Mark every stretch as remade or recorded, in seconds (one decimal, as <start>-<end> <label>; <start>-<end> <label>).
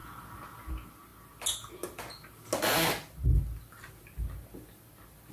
0.0-5.3 recorded